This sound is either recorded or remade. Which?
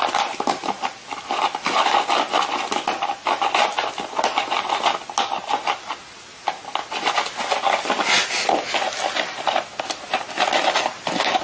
recorded